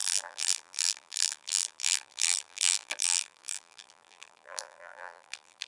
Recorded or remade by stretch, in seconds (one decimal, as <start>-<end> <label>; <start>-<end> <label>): 0.0-5.7 remade

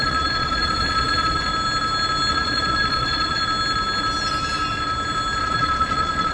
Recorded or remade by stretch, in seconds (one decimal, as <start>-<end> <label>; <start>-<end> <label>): 0.0-1.5 remade; 1.5-2.3 recorded; 2.3-3.4 remade; 3.4-5.4 recorded; 5.4-6.3 remade

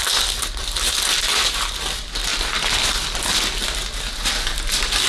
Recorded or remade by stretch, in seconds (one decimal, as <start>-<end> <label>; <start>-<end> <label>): 0.0-5.1 recorded